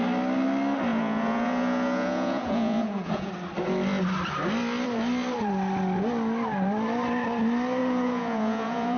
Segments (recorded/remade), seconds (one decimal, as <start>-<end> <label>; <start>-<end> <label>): 0.0-0.9 recorded; 0.9-3.3 remade; 3.3-7.8 recorded; 7.8-9.0 remade